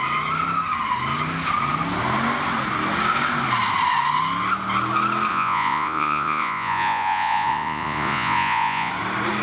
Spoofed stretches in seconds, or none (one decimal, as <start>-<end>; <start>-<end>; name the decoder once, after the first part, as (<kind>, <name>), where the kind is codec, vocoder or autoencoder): 5.3-8.9 (vocoder, Vocos)